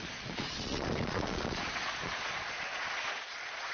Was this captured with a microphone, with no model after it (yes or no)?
no